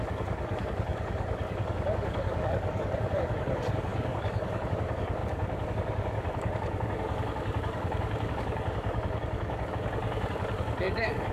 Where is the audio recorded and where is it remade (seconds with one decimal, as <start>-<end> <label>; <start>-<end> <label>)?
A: 0.0-11.3 remade